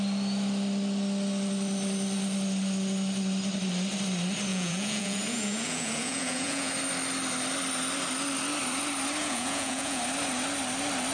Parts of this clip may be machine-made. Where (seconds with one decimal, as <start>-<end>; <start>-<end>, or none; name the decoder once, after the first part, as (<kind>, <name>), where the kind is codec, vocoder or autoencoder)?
4.5-6.7 (vocoder, Vocos); 9.2-10.0